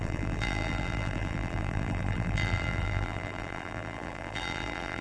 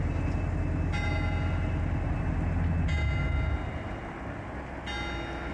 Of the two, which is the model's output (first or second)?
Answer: first